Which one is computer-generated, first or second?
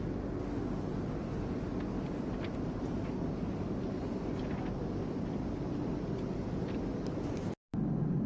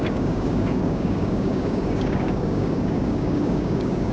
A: second